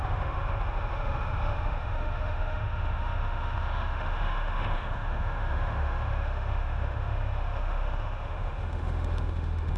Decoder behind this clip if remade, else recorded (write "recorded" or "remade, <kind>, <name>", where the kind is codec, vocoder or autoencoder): remade, autoencoder, DAC-VAE